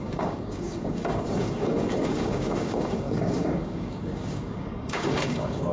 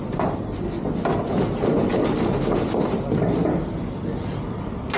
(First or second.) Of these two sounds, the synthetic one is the first